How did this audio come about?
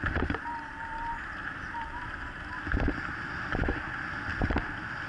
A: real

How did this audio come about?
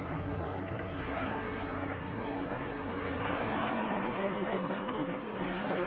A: fake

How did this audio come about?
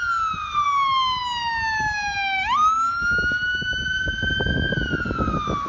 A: real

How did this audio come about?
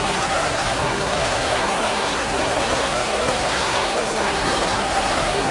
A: fake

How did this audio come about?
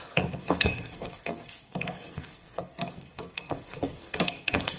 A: fake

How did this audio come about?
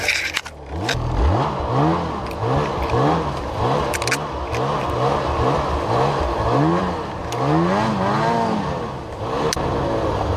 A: real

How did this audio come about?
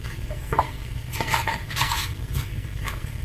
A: fake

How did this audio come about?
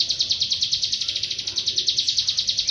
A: real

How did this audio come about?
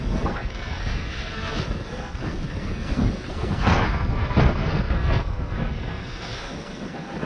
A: fake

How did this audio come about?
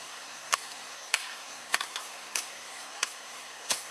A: fake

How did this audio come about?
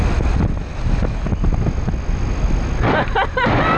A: real